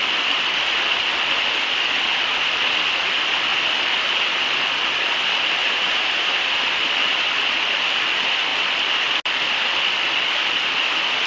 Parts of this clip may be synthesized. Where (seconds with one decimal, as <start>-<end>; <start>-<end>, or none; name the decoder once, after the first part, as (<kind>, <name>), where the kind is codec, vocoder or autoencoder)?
5.6-6.8 (vocoder, BigVGAN v2)